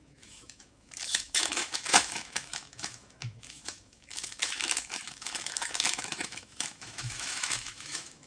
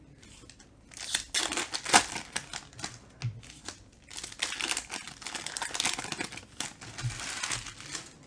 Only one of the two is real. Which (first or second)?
second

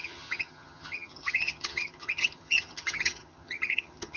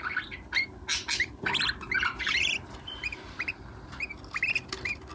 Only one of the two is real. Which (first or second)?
second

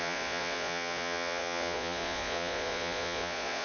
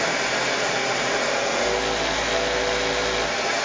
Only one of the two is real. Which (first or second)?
second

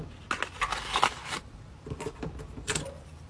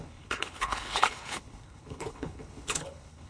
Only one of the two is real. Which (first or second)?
first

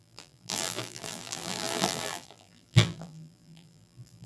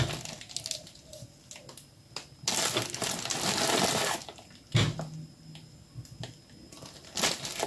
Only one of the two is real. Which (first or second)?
second